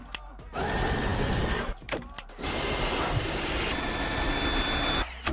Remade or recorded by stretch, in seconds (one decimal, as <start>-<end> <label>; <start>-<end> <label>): 0.0-5.3 recorded